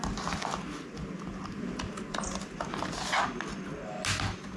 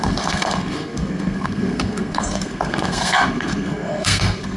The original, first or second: first